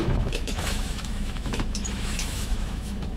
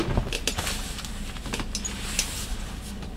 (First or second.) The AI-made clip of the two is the first